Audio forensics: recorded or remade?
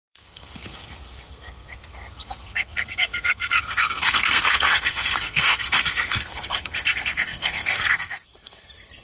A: remade